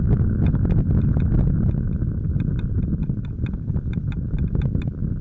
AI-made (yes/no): no